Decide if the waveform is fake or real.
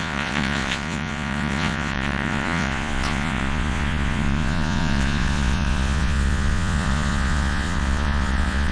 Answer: fake